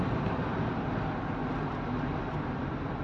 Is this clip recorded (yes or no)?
no